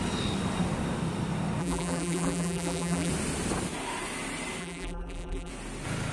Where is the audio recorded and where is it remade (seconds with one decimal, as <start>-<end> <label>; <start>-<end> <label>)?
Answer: 0.0-1.6 recorded; 1.6-3.1 remade; 3.1-4.6 recorded; 4.6-5.5 remade; 5.5-6.1 recorded